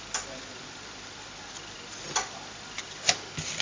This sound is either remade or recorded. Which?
recorded